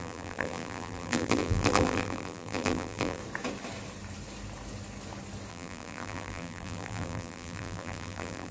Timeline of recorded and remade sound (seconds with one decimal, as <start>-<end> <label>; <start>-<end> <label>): 0.0-3.2 remade; 3.2-5.5 recorded; 5.5-8.5 remade